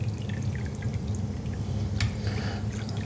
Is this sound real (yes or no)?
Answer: yes